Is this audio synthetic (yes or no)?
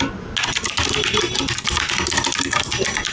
no